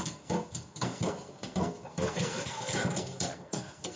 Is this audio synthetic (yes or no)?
yes